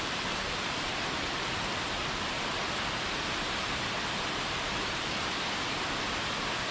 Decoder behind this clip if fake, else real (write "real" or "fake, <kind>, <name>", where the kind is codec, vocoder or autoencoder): real